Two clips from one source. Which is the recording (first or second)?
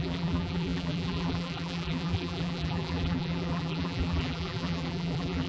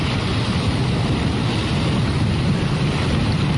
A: second